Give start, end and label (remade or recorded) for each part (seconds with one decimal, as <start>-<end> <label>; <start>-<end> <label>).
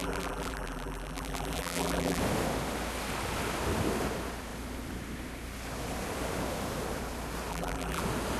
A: 0.0-2.2 remade; 2.2-7.5 recorded; 7.5-8.0 remade; 8.0-8.4 recorded